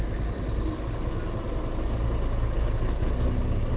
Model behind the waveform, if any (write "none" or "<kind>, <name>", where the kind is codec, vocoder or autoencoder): none